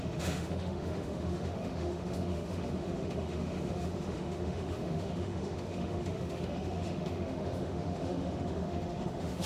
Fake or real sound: fake